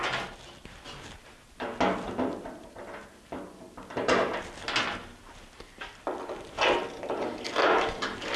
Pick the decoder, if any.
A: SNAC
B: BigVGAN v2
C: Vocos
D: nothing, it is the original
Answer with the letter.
D